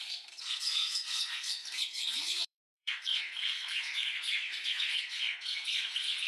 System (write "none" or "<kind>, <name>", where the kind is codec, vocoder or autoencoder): codec, SNAC